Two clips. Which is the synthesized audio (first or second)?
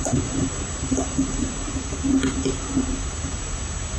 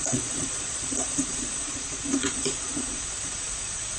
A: second